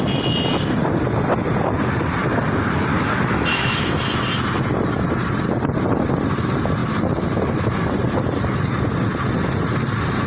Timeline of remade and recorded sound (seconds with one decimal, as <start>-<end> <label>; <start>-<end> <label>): 0.0-3.5 recorded; 3.5-4.1 remade; 4.1-10.3 recorded